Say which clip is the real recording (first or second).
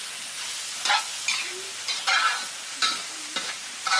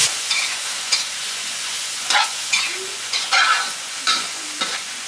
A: first